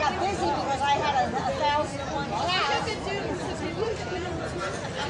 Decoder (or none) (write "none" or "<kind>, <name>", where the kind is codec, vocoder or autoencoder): none